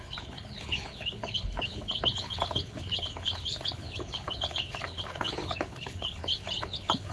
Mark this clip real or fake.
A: fake